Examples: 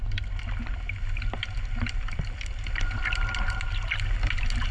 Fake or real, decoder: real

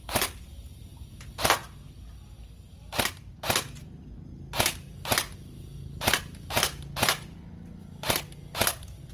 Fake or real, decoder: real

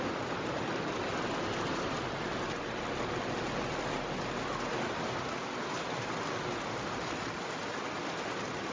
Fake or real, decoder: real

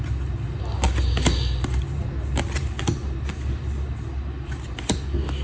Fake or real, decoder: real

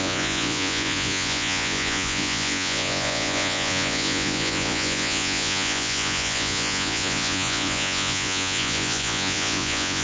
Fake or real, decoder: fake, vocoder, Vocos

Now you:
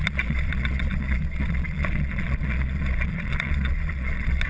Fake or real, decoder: fake, vocoder, Vocos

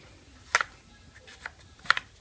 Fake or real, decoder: real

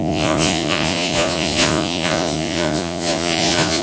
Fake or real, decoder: fake, vocoder, Vocos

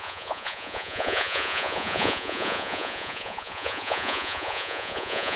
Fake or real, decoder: fake, vocoder, Vocos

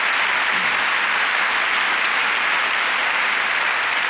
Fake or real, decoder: real